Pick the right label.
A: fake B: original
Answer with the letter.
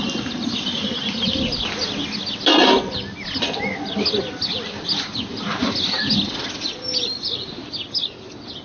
B